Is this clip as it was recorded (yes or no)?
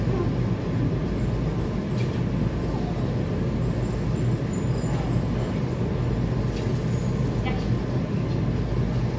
yes